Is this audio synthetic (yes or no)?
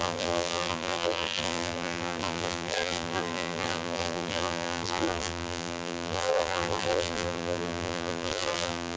yes